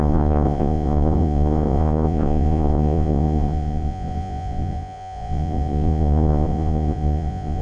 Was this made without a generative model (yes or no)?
no